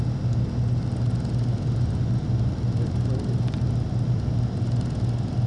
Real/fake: real